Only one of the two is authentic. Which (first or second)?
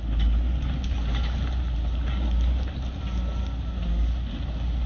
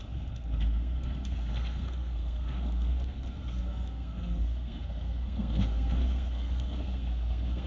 first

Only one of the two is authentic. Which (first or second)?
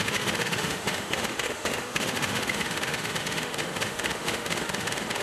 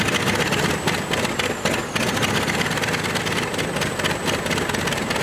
second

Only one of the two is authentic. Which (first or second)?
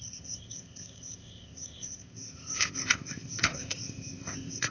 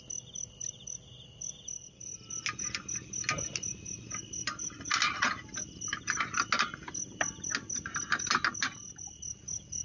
second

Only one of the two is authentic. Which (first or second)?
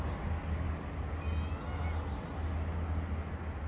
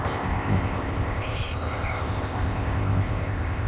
first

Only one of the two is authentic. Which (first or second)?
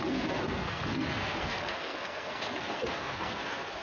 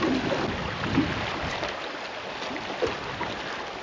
second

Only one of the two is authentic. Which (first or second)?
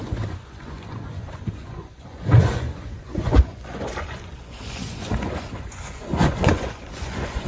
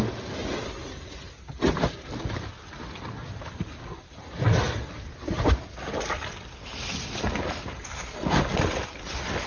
second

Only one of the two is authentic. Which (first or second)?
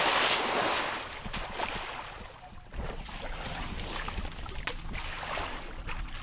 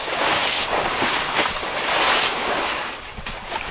first